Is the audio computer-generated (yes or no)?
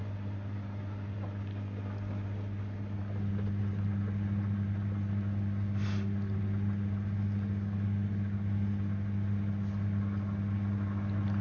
no